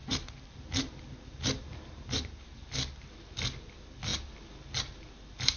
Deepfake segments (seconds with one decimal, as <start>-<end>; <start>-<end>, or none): 0.0-2.4